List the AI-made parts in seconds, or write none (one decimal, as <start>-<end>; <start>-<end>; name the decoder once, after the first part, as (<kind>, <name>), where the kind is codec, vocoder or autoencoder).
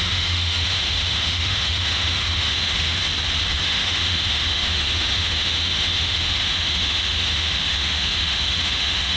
0.0-3.0 (autoencoder, DAC-VAE); 3.6-9.2